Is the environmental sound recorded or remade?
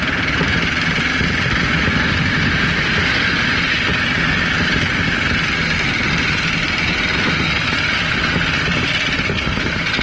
recorded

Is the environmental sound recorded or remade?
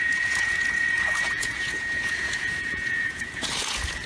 remade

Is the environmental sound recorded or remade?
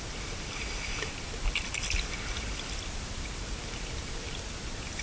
recorded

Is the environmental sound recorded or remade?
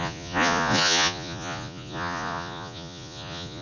remade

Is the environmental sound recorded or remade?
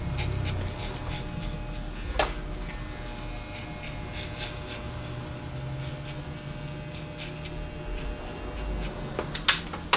recorded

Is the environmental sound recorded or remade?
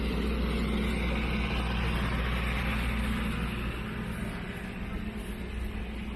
recorded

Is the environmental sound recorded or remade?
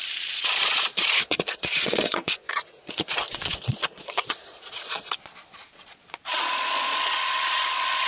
remade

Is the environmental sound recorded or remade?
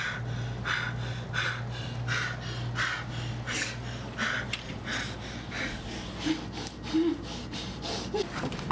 recorded